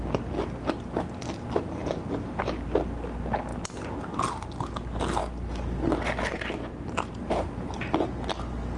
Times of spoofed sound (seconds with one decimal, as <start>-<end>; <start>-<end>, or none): none